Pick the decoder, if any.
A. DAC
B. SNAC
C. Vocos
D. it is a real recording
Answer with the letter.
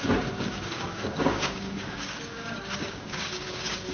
A